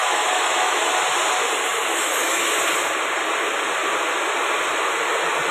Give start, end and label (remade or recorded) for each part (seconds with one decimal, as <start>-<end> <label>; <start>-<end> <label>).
0.0-0.9 remade; 0.9-1.9 recorded; 1.9-2.5 remade; 2.5-5.5 recorded